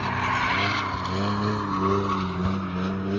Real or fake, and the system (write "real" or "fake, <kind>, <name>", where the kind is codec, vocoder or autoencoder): real